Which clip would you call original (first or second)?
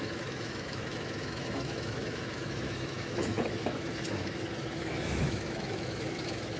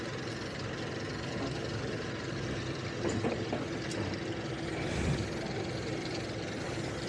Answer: second